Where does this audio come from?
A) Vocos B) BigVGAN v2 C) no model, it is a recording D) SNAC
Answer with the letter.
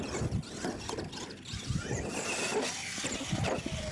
C